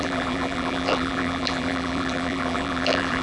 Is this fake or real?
fake